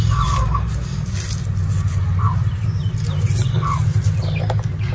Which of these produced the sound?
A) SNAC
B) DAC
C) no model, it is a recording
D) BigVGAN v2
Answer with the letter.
C